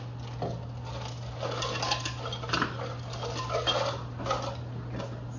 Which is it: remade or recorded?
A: recorded